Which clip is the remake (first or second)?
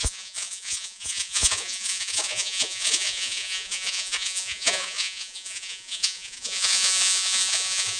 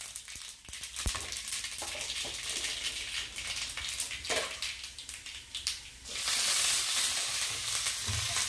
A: first